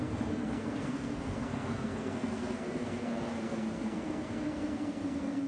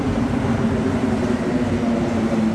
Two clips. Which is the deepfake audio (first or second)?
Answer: first